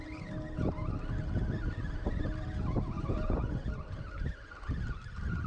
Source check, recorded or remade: recorded